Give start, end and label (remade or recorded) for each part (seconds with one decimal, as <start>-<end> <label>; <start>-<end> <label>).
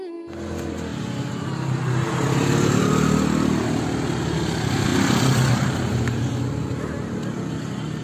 0.0-8.0 recorded